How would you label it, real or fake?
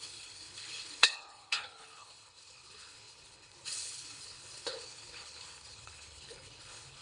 fake